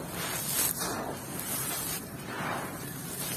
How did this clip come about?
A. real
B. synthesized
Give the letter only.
A